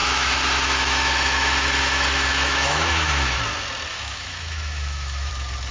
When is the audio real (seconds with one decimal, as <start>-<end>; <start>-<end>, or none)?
3.4-3.9; 5.3-5.7